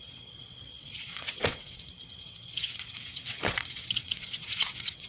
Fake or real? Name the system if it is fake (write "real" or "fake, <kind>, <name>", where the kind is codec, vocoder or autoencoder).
fake, vocoder, WaveNeXt